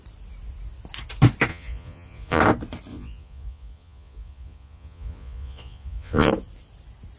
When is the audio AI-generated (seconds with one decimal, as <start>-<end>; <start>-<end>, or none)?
1.5-2.4; 2.9-6.3

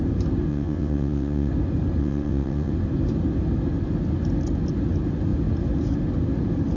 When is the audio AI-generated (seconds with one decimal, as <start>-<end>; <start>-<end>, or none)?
0.5-1.5; 2.0-2.7

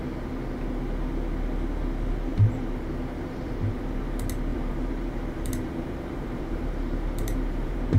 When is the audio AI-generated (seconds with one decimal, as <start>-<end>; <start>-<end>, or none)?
2.3-3.4; 4.5-8.0

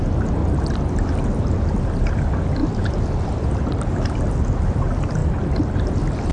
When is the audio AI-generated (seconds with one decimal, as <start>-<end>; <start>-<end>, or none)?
0.4-1.1; 5.2-5.8

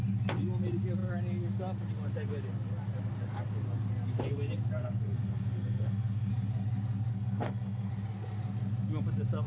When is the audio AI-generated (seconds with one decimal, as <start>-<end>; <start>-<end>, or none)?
4.8-6.3; 7.1-7.9